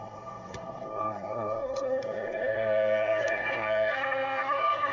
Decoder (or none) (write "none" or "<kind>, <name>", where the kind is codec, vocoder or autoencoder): codec, SNAC